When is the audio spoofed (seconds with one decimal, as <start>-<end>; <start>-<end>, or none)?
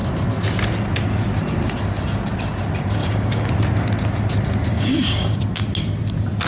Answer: 3.0-3.5; 4.7-5.4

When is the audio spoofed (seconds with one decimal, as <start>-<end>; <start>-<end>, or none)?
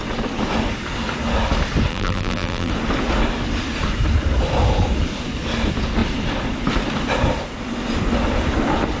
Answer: 1.9-2.7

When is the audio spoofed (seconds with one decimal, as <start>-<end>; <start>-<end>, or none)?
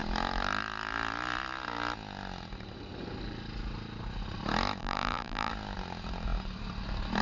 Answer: 4.8-5.5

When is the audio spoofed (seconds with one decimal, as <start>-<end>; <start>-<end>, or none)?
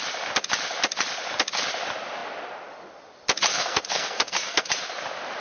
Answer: 3.5-4.7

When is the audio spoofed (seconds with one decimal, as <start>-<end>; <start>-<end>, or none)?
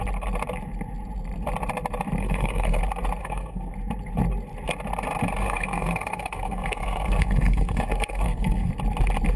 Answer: 2.2-2.8; 3.2-3.7; 5.4-8.7